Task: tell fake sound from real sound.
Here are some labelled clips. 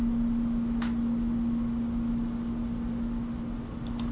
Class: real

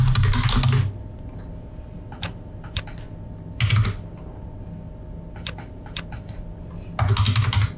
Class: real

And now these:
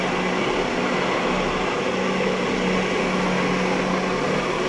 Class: real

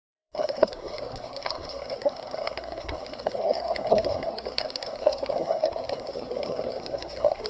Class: fake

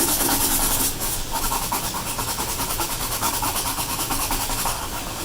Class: fake